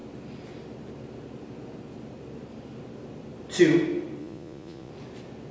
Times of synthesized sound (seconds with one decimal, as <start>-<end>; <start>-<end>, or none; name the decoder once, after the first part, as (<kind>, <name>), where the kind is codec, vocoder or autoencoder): 4.2-4.9 (vocoder, Vocos)